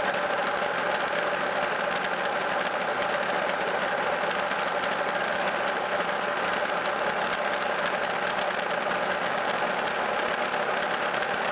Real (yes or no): yes